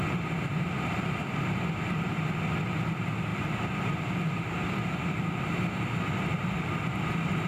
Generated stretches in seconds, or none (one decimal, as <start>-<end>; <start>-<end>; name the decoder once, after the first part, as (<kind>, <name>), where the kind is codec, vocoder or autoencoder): 0.0-7.5 (vocoder, BigVGAN v2)